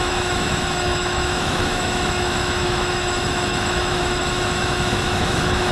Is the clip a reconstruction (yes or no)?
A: yes